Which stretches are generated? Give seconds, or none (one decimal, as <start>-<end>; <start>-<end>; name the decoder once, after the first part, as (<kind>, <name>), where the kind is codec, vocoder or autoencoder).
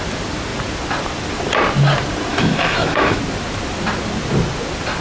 2.3-3.2 (autoencoder, DAC-VAE)